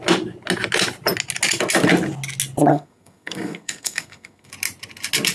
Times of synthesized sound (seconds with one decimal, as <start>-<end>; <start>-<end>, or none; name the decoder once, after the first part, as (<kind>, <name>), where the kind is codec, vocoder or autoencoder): 2.7-4.5 (codec, SNAC)